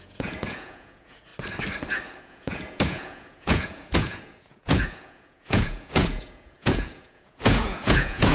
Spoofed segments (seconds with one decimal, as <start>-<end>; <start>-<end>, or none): 0.0-1.3; 2.2-8.3